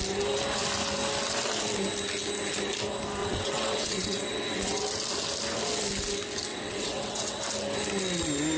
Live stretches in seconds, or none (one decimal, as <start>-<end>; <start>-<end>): 0.0-3.2; 4.8-6.5; 7.4-8.6